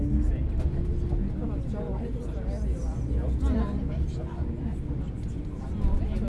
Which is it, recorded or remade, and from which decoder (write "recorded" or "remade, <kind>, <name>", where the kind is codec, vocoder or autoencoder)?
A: recorded